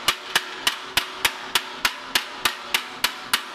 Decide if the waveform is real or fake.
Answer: real